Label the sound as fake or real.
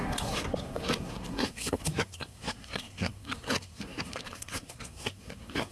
fake